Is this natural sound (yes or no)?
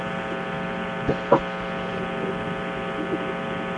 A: yes